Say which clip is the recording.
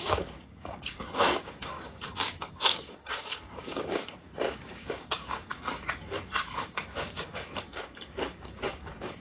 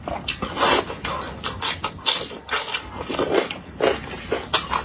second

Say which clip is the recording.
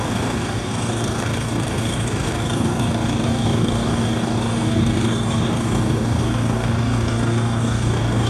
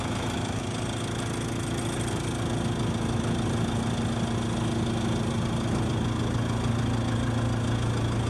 second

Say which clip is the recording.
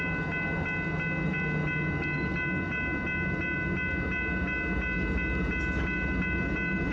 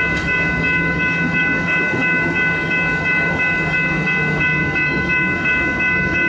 first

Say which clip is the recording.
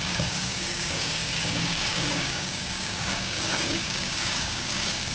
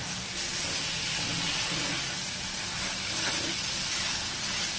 second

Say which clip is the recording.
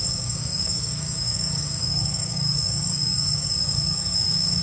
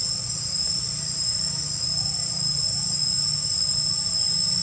second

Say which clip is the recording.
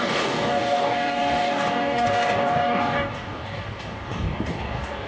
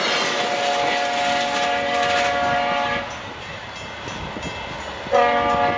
second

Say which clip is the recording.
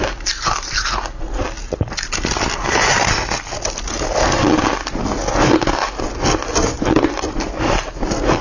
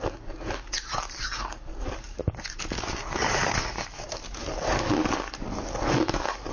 first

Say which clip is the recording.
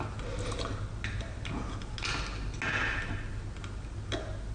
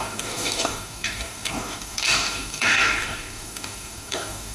first